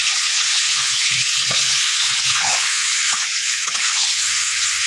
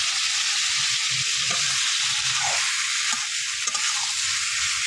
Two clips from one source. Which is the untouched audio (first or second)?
second